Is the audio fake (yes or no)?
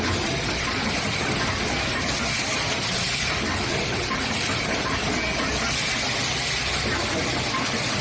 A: no